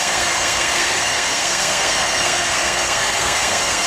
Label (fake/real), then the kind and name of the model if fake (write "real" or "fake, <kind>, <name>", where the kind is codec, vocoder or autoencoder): fake, codec, SNAC